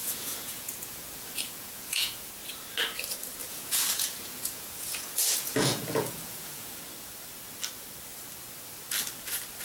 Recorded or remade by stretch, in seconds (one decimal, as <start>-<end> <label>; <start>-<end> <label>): 0.0-2.3 remade; 2.3-3.4 recorded; 3.4-6.8 remade; 6.8-9.6 recorded